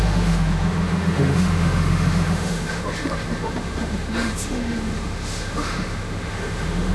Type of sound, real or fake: fake